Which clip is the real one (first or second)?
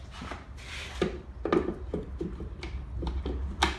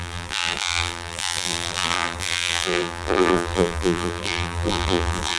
first